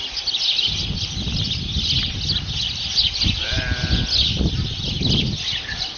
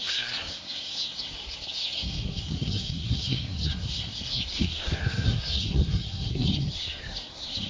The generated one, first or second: second